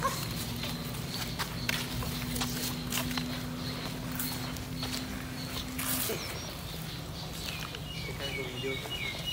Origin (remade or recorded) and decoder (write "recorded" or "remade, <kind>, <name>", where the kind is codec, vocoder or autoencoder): recorded